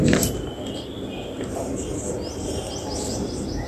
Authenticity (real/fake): real